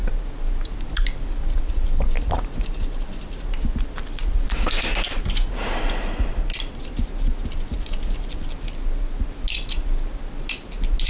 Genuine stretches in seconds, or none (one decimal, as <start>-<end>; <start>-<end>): 0.0-11.1